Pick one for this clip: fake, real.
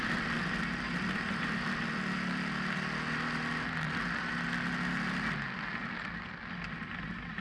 real